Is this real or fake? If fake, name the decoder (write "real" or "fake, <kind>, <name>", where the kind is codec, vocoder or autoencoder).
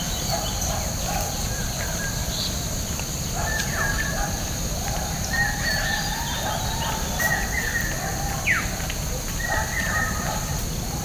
fake, vocoder, BigVGAN v2